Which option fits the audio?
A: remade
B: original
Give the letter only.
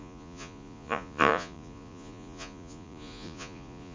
A